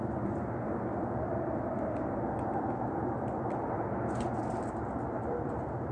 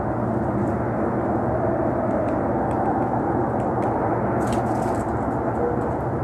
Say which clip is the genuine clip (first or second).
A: second